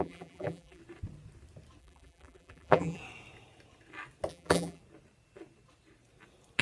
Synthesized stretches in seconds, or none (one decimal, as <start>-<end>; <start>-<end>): 0.0-0.8; 1.8-3.0; 4.3-4.8